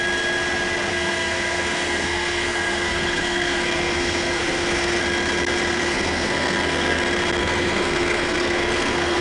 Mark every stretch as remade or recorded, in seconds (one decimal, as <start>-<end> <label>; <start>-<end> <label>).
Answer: 0.0-0.9 recorded; 0.9-5.0 remade; 5.0-5.7 recorded; 5.7-7.0 remade; 7.0-7.4 recorded; 7.4-9.2 remade